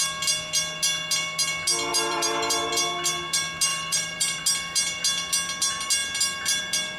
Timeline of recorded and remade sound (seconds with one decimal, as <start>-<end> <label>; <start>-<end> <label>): 0.0-1.9 recorded; 1.9-2.7 remade; 2.7-3.7 recorded; 3.7-4.4 remade; 4.4-7.0 recorded